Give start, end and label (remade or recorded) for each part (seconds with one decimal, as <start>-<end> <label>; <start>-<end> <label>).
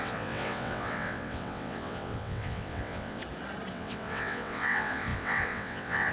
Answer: 0.0-3.2 remade; 3.2-3.7 recorded; 3.7-6.1 remade